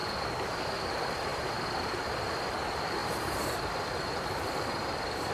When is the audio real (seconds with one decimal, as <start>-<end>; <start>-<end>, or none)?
0.0-1.3; 2.2-3.0